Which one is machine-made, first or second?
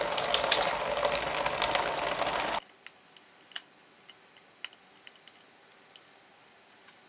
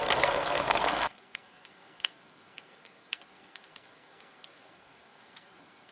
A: second